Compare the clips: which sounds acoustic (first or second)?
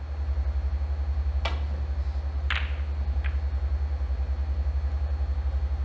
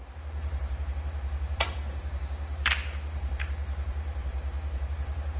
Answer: first